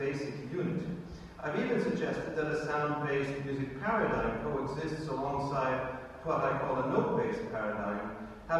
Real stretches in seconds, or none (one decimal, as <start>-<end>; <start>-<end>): 0.0-8.6